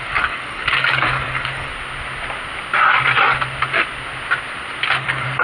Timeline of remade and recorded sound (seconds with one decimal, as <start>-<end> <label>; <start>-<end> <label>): 0.0-1.7 remade; 1.7-4.9 recorded; 4.9-5.4 remade